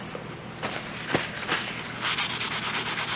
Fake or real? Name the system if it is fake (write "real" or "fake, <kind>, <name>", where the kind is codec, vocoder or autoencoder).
real